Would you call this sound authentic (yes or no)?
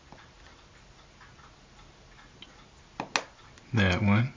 yes